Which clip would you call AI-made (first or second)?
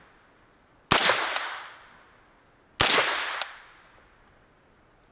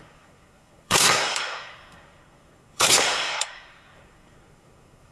second